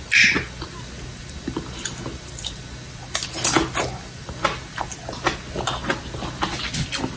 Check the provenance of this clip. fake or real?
real